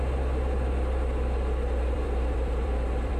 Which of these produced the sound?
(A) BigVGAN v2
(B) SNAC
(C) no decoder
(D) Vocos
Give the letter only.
A